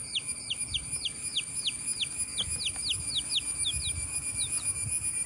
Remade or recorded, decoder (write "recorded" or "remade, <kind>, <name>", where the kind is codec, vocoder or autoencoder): recorded